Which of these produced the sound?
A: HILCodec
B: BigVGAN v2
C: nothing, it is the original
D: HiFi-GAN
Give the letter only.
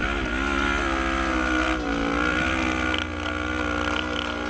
C